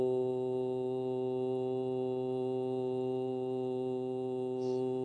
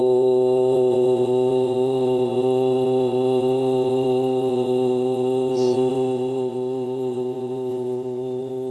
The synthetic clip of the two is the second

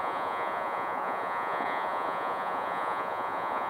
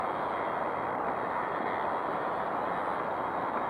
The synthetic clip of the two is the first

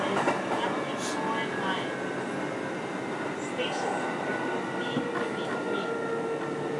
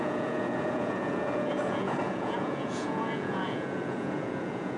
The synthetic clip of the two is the second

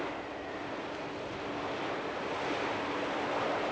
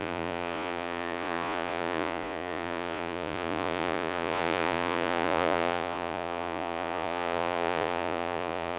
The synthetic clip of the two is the second